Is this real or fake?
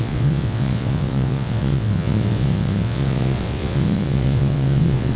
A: fake